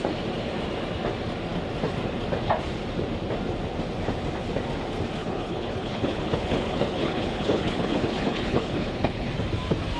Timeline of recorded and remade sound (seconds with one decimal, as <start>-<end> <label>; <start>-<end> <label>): 0.0-5.2 recorded; 5.2-9.3 remade; 9.3-10.0 recorded

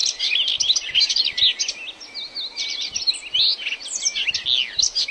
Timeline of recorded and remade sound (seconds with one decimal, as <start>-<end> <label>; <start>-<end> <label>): 0.0-5.1 recorded

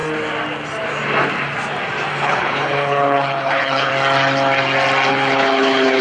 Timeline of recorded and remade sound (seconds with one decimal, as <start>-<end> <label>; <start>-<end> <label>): 0.0-2.1 recorded; 2.1-3.9 remade; 3.9-5.1 recorded; 5.1-6.0 remade

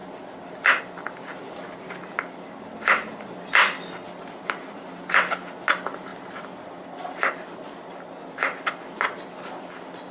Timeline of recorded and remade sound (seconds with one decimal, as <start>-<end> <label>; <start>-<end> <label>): 0.0-6.1 recorded; 6.1-7.3 remade; 7.3-10.1 recorded

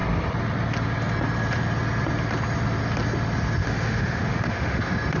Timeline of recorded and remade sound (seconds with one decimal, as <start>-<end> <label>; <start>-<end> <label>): 0.0-3.6 recorded; 3.6-4.8 remade; 4.8-5.2 recorded

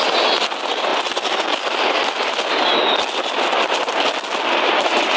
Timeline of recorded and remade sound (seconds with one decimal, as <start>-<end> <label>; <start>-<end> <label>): 0.0-5.2 recorded

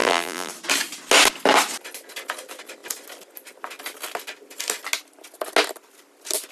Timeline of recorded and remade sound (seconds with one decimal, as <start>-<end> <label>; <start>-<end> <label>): 0.0-0.5 remade; 0.5-6.5 recorded

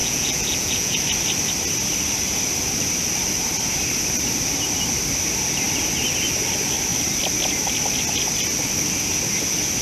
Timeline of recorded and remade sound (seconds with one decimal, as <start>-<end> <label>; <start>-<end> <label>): 0.0-1.0 remade; 1.0-9.8 recorded